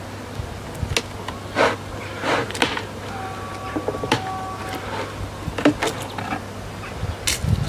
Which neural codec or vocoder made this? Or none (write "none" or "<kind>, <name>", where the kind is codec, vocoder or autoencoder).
none